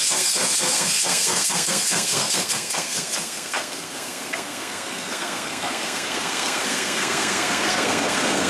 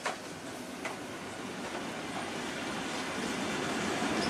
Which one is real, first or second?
second